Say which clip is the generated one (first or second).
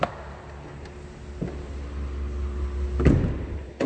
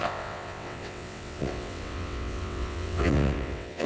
second